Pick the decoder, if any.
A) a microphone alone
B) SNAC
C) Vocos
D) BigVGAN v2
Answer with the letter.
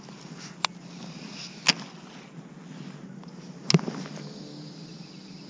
A